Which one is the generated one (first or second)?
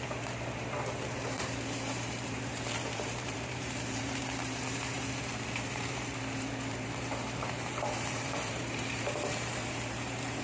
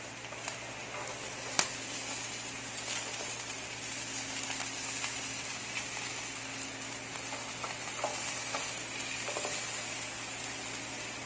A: first